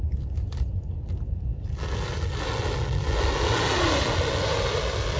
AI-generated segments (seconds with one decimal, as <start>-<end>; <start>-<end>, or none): none